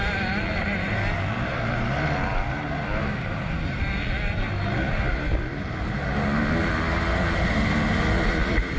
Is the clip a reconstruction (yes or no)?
no